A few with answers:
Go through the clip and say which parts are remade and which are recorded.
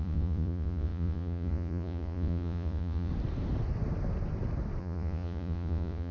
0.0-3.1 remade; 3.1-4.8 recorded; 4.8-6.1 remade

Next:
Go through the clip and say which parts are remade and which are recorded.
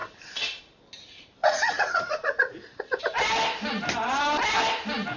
0.0-1.4 recorded; 1.4-3.0 remade; 3.0-5.2 recorded